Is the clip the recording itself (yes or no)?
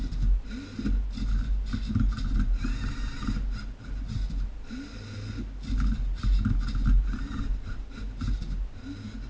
yes